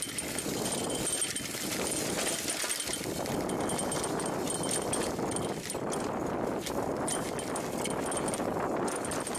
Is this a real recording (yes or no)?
yes